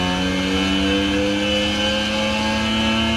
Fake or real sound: real